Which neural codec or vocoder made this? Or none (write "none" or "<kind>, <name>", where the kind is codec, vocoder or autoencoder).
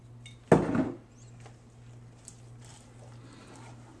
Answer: none